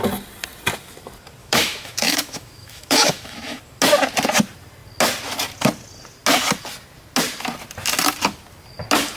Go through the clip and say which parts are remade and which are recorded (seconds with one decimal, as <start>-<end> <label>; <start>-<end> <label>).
0.0-1.4 recorded; 1.4-3.6 remade; 3.6-9.2 recorded